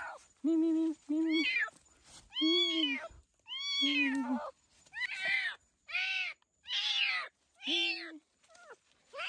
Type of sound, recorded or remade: recorded